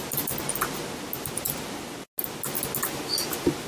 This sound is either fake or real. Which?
real